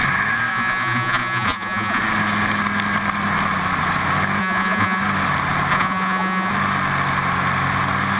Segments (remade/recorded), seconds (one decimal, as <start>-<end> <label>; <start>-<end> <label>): 0.0-0.5 recorded; 0.5-2.0 remade; 2.0-4.4 recorded; 4.4-5.0 remade; 5.0-5.7 recorded; 5.7-6.5 remade; 6.5-8.2 recorded